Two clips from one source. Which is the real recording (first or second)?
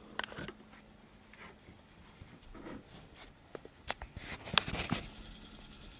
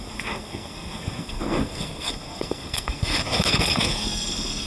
first